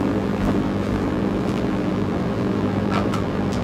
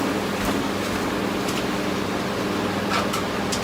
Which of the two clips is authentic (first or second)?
second